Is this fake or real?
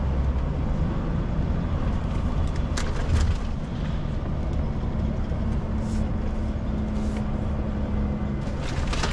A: real